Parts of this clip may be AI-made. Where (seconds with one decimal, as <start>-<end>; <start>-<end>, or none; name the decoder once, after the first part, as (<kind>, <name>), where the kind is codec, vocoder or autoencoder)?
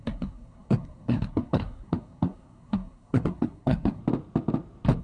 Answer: 0.0-4.0 (codec, SNAC)